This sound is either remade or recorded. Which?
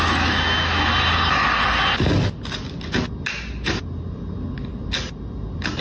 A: recorded